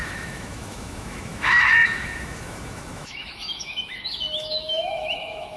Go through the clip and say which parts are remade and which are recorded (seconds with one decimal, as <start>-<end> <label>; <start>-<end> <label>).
0.0-5.6 remade